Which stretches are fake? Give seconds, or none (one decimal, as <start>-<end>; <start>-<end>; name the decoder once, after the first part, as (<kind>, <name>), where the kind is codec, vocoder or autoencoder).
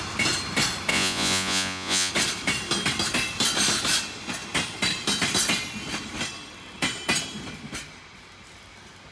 0.9-2.1 (vocoder, Vocos)